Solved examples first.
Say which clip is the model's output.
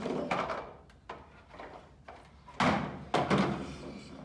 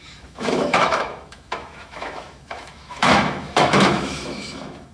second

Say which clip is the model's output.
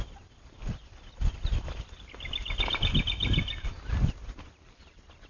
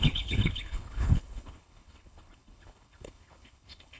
second